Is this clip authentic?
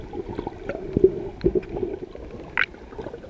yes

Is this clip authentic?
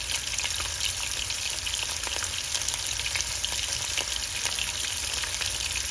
yes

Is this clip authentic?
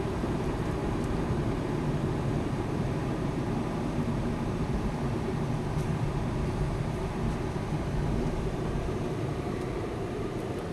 no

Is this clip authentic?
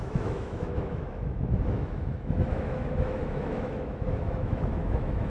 no